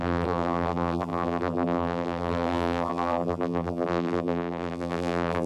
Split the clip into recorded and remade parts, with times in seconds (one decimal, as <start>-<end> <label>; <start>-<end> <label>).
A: 0.0-5.5 remade